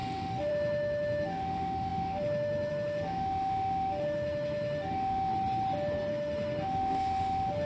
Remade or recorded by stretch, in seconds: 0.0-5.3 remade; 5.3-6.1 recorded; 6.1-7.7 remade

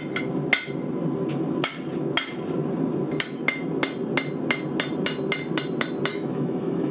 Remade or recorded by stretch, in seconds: 0.0-6.1 recorded; 6.1-6.9 remade

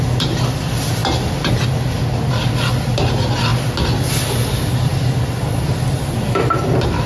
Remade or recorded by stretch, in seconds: 0.0-7.1 recorded

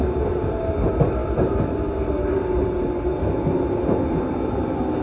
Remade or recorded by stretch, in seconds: 0.0-5.0 recorded